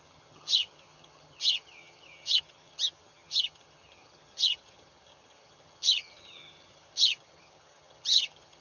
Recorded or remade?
remade